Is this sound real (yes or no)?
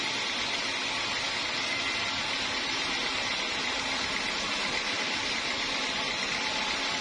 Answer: yes